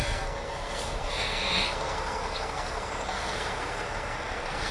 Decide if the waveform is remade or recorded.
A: remade